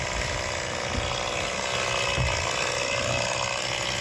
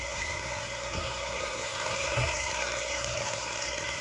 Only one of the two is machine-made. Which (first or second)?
second